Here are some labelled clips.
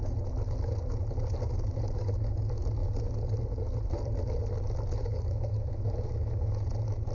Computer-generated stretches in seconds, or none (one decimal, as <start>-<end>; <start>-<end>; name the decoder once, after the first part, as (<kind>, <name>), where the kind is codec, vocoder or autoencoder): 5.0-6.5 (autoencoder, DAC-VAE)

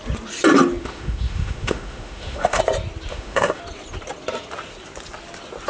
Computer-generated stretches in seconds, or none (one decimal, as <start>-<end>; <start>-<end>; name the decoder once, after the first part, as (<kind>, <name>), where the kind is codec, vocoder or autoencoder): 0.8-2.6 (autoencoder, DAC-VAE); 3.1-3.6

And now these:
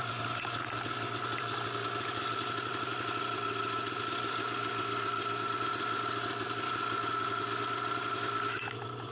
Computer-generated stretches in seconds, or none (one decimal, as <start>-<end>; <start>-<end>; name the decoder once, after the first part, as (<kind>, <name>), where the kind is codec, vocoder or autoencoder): none

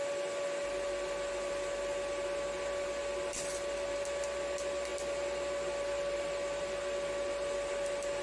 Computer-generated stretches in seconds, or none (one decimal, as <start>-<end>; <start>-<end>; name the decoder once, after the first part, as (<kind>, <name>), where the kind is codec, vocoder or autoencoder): none

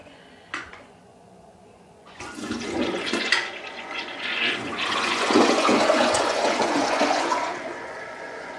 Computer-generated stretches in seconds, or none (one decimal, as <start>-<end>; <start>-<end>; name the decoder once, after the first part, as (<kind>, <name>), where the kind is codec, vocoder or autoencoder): 0.0-8.6 (vocoder, Vocos)